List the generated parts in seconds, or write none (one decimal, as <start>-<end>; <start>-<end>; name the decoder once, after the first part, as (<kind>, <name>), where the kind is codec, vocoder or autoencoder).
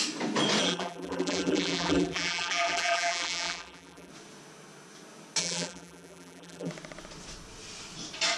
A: 0.6-4.1 (vocoder, BigVGAN v2); 5.4-6.7